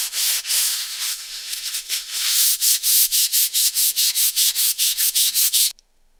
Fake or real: fake